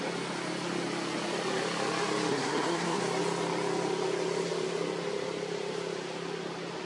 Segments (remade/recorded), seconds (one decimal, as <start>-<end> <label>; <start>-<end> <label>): 0.0-2.3 recorded; 2.3-3.0 remade; 3.0-6.9 recorded